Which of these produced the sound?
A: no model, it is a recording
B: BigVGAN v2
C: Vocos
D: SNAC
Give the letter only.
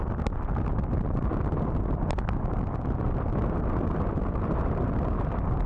B